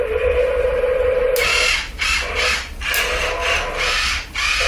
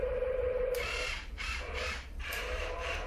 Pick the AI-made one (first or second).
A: second